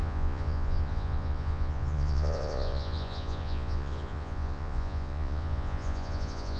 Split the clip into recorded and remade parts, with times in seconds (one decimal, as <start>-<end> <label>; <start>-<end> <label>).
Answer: 0.0-6.6 remade